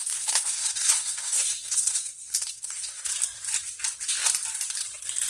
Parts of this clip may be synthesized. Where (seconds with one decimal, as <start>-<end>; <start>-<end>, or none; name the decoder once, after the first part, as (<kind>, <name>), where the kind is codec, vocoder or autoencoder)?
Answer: 0.0-3.1 (codec, SNAC)